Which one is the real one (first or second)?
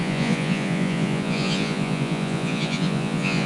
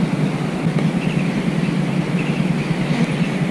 second